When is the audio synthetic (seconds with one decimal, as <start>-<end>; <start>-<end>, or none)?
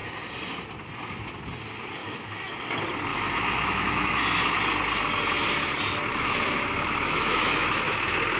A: 2.0-2.5; 3.1-4.2; 6.1-7.9